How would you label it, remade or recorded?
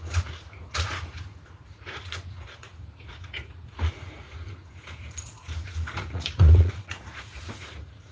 remade